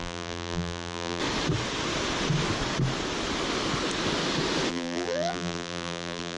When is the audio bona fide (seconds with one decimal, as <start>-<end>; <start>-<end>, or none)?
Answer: 1.2-4.7